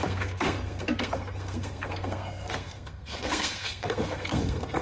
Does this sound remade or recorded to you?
remade